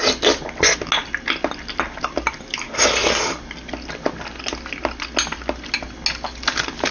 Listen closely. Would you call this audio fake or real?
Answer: real